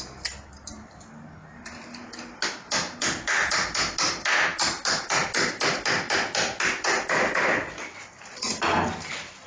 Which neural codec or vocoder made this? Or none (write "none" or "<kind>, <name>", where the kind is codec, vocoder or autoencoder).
none